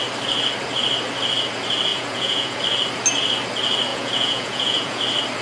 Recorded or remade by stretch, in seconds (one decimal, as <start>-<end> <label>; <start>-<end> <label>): 0.0-1.9 recorded; 1.9-2.6 remade; 2.6-3.9 recorded; 3.9-5.0 remade; 5.0-5.4 recorded